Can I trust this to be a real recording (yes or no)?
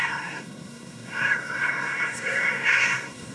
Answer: no